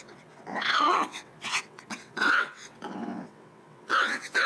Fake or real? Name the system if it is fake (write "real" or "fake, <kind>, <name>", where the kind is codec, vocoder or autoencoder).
fake, vocoder, WaveNeXt